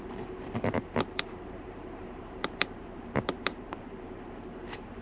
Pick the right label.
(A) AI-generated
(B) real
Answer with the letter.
A